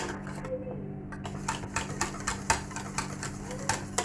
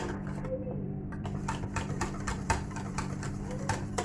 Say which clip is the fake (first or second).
second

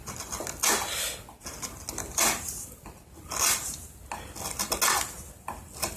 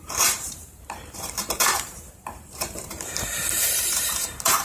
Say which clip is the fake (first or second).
second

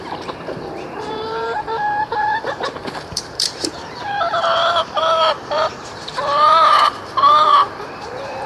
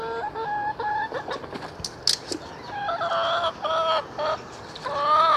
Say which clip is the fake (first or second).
first